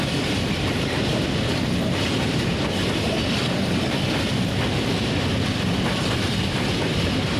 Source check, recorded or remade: remade